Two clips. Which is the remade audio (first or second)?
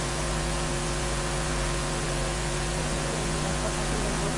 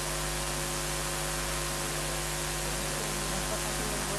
first